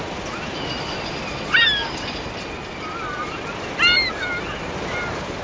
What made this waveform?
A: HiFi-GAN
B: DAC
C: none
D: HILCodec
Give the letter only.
C